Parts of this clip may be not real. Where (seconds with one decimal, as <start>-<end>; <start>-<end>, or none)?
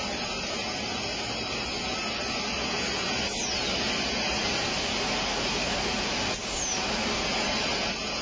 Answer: none